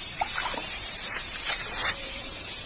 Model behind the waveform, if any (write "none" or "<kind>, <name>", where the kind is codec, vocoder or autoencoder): vocoder, BigVGAN v2